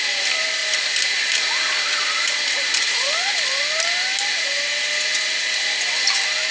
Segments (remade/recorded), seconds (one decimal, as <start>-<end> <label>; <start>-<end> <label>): 0.0-0.6 recorded; 0.6-2.3 remade; 2.3-6.5 recorded